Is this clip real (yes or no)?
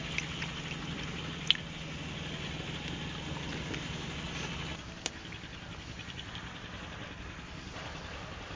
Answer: yes